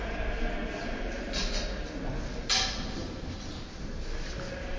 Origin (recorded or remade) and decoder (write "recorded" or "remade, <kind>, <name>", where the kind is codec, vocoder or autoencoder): recorded